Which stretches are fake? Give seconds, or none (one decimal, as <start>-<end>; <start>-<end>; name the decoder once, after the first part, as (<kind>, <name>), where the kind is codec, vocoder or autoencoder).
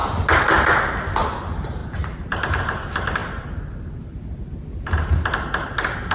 1.8-2.6 (vocoder, BigVGAN v2)